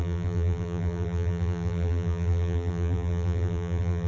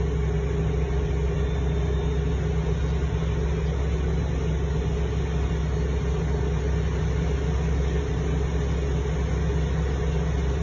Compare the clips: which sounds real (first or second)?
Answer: second